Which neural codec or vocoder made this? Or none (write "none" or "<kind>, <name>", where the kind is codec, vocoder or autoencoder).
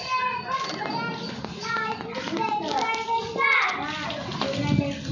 none